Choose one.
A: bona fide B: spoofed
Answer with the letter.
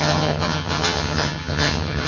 B